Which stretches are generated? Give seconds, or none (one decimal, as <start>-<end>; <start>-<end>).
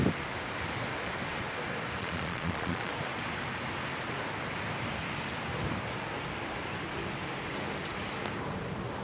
2.0-2.9